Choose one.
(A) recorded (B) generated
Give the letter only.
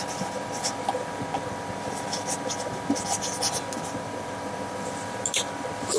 A